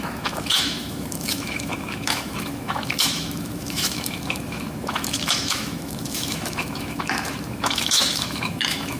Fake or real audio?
fake